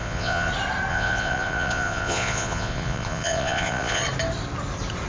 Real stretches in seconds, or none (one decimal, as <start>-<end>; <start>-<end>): 0.5-0.9; 4.0-5.1